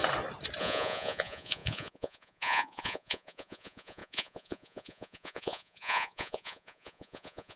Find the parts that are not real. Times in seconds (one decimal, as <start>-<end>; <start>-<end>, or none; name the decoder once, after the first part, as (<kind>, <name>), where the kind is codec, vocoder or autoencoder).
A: 0.6-7.6 (vocoder, Vocos)